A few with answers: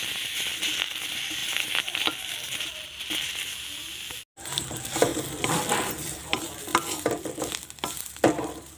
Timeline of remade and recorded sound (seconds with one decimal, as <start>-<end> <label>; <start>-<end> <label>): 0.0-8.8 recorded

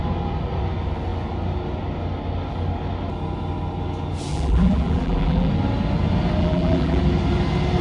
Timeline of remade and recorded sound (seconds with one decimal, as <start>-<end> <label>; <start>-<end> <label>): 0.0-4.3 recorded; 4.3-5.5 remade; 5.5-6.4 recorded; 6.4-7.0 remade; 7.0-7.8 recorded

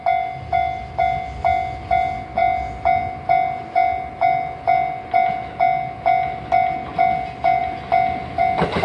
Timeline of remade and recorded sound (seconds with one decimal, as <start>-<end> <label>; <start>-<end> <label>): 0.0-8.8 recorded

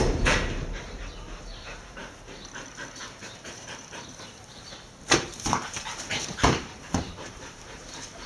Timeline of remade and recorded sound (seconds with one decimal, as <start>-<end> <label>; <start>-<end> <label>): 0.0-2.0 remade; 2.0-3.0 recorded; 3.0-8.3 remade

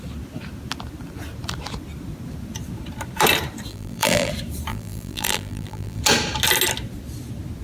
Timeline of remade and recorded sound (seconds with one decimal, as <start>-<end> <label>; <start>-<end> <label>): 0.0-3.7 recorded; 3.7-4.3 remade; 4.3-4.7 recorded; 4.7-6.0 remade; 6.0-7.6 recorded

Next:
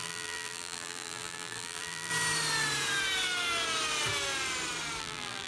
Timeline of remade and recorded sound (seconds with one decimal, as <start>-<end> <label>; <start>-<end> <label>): 0.0-2.1 remade; 2.1-5.0 recorded; 5.0-5.5 remade